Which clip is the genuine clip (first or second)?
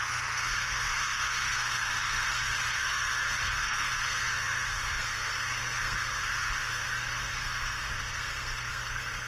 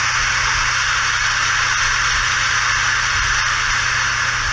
second